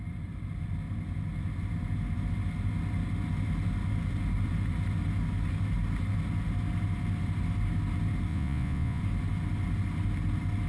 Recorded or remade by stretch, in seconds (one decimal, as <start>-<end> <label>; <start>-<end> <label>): 0.0-8.3 recorded; 8.3-9.0 remade; 9.0-10.7 recorded